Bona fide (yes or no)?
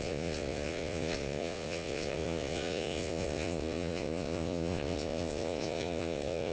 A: no